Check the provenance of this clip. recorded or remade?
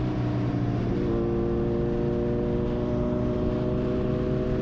recorded